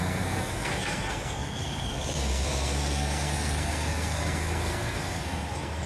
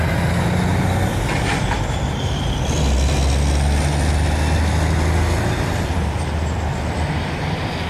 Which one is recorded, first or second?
second